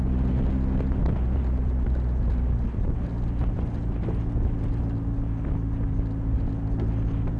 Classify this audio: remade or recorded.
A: recorded